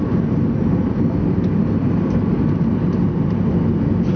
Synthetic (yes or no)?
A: no